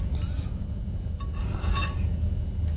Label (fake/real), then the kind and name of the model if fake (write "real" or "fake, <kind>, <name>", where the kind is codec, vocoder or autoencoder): real